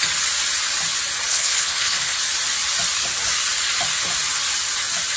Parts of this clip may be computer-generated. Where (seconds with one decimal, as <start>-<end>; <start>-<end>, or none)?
1.3-2.2